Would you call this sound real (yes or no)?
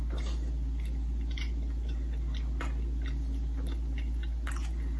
yes